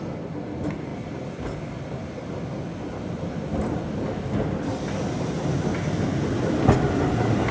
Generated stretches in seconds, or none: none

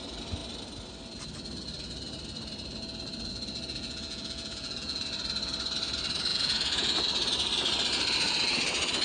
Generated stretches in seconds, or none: 3.7-5.0 (vocoder, Vocos); 6.3-7.0

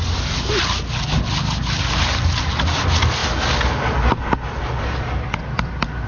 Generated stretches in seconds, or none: none